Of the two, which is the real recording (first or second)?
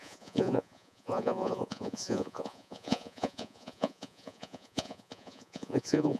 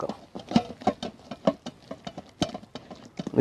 second